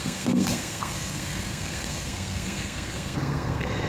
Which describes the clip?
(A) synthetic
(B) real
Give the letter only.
A